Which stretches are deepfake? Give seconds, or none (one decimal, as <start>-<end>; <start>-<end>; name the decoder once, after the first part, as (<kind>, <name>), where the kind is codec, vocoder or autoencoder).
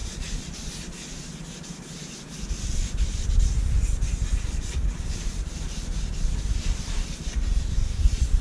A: none